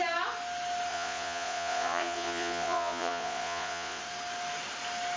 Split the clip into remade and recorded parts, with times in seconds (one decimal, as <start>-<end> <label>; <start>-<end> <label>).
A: 0.0-0.9 recorded; 0.9-4.0 remade; 4.0-5.2 recorded